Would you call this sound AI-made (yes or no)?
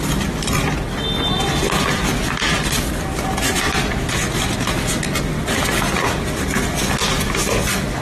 no